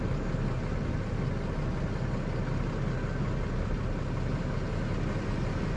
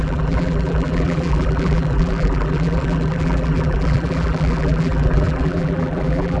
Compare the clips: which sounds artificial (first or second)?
second